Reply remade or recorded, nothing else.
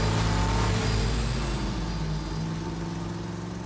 recorded